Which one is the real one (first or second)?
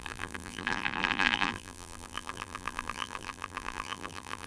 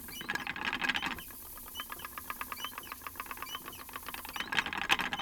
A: second